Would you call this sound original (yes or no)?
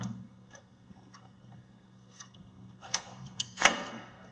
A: no